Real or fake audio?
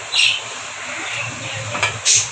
real